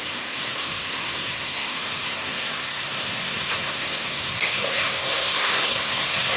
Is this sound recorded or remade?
remade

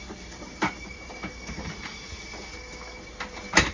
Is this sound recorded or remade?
recorded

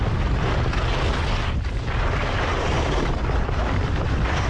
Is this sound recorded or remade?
recorded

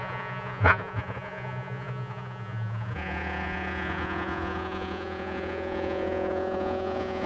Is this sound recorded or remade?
remade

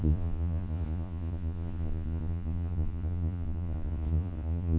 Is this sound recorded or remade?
remade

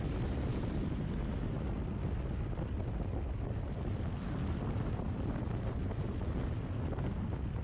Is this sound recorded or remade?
recorded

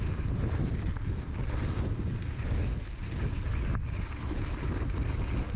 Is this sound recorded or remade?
recorded